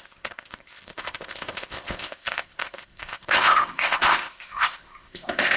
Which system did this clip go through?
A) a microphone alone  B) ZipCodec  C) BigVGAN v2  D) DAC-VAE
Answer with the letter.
B